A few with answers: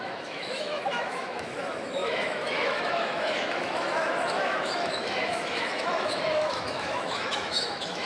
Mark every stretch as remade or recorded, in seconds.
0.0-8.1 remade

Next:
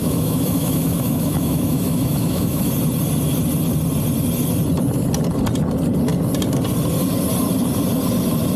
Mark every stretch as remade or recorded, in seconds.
0.0-2.7 remade; 2.7-8.6 recorded

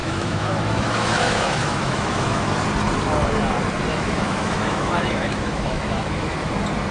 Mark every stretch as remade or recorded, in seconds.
0.0-2.5 remade; 2.5-3.9 recorded; 3.9-6.5 remade; 6.5-6.9 recorded